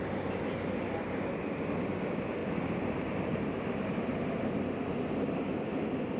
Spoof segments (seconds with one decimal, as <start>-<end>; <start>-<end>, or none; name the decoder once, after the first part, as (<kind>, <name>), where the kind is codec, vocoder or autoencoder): 2.4-4.2 (vocoder, BigVGAN v2)